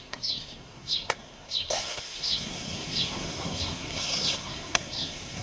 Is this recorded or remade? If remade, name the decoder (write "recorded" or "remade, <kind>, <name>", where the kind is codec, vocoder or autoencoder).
remade, codec, SNAC